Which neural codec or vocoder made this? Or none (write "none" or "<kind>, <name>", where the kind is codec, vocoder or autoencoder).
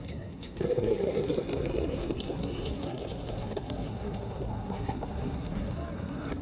codec, SNAC